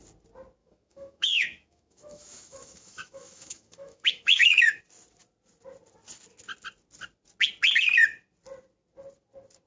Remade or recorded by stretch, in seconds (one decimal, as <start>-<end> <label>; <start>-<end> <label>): 0.0-0.6 recorded; 0.6-4.8 remade; 4.8-9.7 recorded